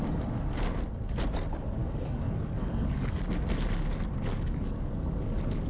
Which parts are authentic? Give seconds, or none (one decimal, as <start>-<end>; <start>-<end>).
0.0-1.8; 3.2-4.3; 4.9-5.7